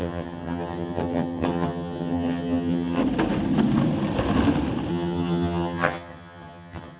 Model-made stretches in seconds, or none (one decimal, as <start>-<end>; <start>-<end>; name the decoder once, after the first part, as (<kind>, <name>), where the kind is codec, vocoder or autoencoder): 0.0-3.0 (vocoder, HiFi-GAN); 4.9-7.0